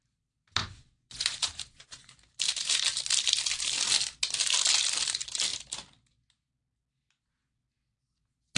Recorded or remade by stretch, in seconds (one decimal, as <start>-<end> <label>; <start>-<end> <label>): 0.0-0.6 recorded; 0.6-2.1 remade; 2.1-8.6 recorded